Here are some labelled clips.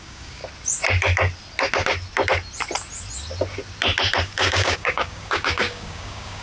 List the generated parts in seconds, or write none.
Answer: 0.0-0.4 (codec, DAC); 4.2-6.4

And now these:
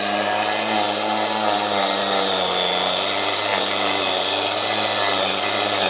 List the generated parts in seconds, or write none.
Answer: none